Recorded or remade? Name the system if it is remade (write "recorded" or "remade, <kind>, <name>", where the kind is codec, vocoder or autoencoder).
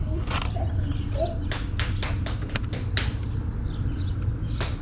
recorded